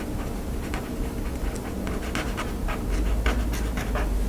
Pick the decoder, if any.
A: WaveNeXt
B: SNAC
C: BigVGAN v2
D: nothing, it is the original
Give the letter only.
D